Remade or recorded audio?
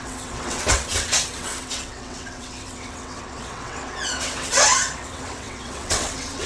remade